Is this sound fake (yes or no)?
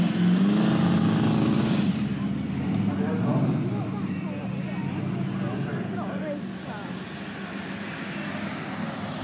no